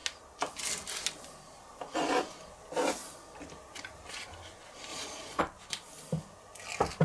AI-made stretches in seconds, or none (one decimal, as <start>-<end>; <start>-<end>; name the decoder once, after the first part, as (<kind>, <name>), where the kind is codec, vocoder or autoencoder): 4.9-5.4 (vocoder, Vocos)

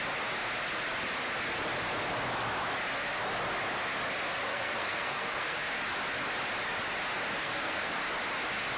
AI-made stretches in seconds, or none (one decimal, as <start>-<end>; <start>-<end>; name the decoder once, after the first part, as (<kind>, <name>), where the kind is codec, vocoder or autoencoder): 4.5-5.6 (codec, SNAC); 7.4-8.0